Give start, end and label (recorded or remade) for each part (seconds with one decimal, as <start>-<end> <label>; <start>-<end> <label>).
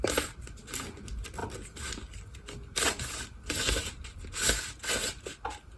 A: 0.0-5.8 recorded